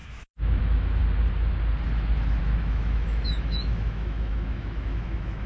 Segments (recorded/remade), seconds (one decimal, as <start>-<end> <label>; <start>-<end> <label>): 0.0-1.0 remade; 1.0-2.4 recorded; 2.4-5.5 remade